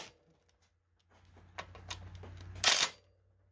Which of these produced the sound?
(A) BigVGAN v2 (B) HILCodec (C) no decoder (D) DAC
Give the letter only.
C